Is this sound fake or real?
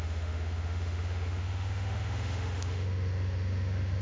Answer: fake